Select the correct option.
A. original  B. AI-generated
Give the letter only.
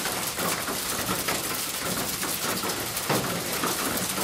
A